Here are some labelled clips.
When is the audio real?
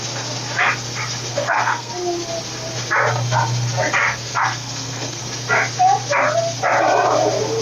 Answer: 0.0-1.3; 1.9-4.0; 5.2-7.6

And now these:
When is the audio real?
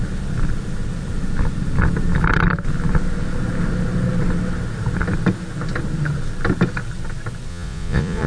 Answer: 0.0-7.5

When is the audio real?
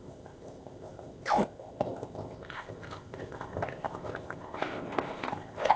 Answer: none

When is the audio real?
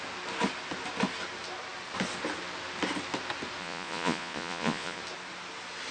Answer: 0.0-3.6; 5.0-5.9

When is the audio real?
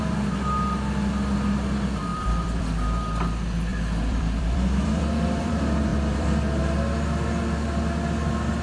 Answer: 0.0-2.1; 2.6-3.7; 5.5-5.9; 6.6-8.6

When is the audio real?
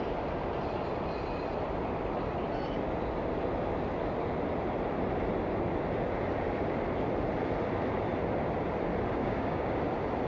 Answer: 0.0-9.2; 9.8-10.3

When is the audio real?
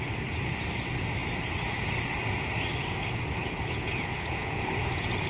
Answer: 0.0-3.4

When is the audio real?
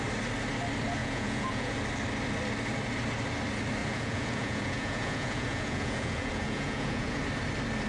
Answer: 0.0-1.0; 1.7-3.8; 7.2-7.9